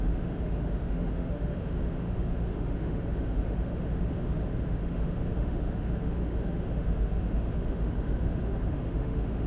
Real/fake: fake